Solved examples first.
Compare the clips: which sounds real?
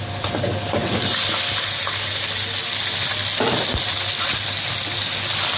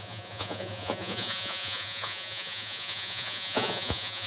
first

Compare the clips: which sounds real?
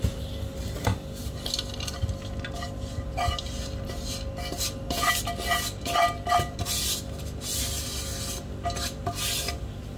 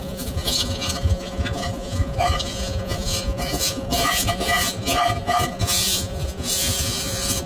first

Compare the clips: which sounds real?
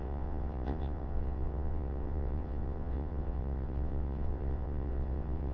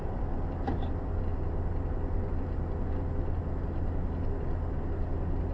second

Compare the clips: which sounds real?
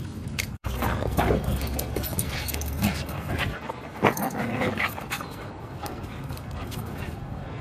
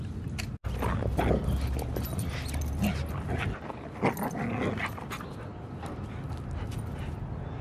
second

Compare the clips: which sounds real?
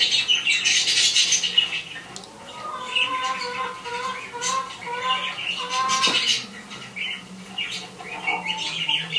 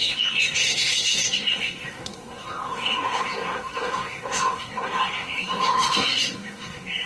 first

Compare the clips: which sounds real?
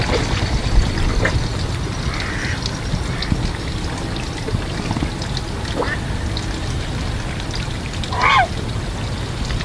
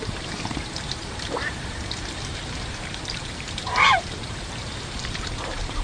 first